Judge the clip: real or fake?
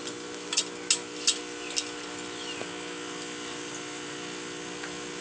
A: real